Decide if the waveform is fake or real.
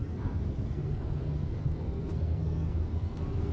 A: fake